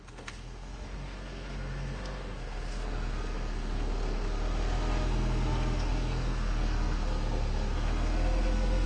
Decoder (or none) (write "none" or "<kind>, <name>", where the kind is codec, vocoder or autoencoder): codec, SNAC